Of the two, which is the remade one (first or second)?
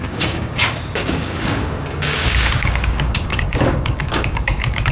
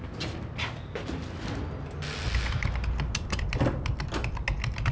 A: first